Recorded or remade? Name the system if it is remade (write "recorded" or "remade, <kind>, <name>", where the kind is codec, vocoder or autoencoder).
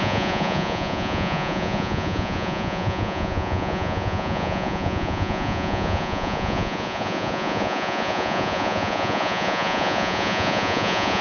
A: remade, vocoder, Vocos